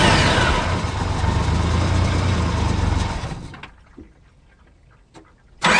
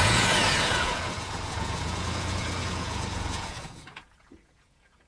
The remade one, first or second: second